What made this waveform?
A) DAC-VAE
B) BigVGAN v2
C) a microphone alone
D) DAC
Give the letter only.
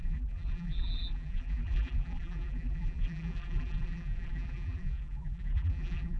B